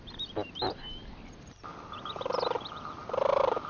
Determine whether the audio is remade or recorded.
recorded